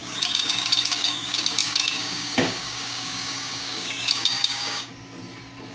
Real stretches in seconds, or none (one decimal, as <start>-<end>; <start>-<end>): 4.9-5.7

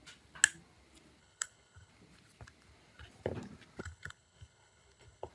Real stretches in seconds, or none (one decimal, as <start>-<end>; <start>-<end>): 0.0-1.2; 1.9-3.8

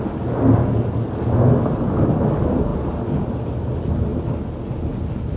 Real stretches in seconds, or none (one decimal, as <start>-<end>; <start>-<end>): 0.0-5.4